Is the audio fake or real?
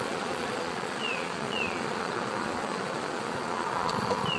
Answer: fake